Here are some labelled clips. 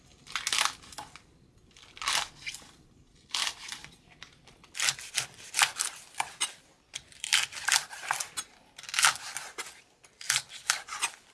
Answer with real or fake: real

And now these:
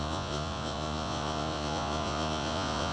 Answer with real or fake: fake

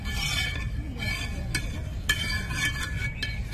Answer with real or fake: real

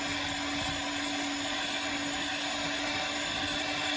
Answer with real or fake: real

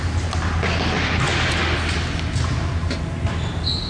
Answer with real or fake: real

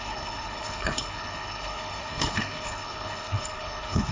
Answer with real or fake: fake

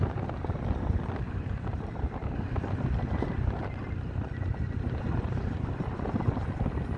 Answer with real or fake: real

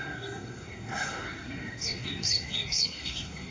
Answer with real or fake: fake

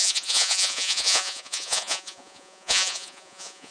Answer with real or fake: fake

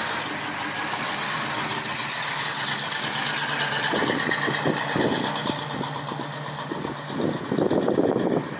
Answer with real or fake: real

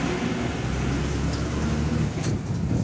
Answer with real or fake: real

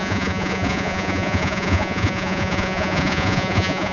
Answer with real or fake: fake